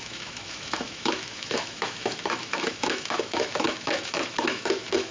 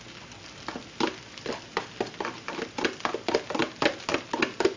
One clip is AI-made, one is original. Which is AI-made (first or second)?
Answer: first